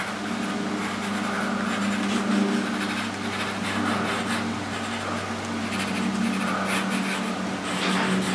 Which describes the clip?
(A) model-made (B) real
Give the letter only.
B